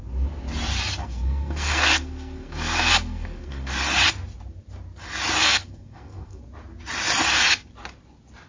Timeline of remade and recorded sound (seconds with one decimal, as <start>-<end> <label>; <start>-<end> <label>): 0.0-1.0 recorded; 1.0-3.7 remade; 3.7-5.4 recorded; 5.4-6.4 remade; 6.4-8.5 recorded